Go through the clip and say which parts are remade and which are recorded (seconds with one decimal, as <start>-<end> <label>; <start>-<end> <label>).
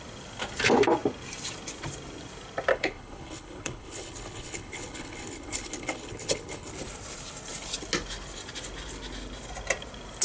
0.0-2.7 recorded; 2.7-6.7 remade; 6.7-10.2 recorded